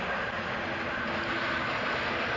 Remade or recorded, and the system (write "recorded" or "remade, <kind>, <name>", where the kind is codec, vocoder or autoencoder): recorded